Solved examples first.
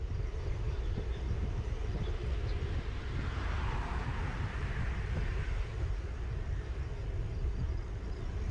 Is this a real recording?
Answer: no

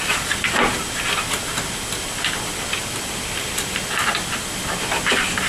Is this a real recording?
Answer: yes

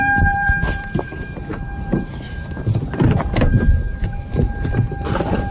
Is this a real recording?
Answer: no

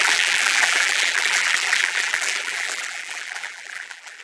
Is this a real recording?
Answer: no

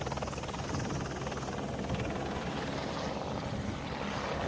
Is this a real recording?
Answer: yes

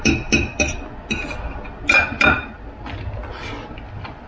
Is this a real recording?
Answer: yes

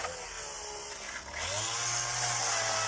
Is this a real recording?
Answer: yes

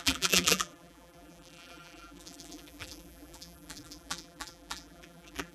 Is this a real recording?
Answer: no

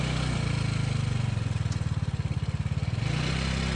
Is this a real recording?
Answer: yes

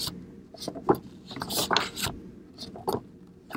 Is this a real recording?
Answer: yes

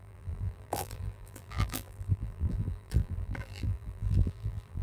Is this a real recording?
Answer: no